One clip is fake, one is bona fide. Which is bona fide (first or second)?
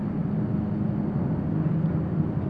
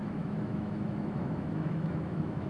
first